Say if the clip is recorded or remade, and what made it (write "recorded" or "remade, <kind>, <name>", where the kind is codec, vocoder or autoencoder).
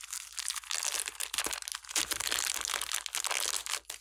recorded